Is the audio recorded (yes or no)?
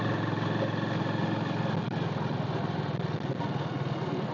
yes